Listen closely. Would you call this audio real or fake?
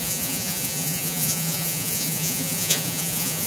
fake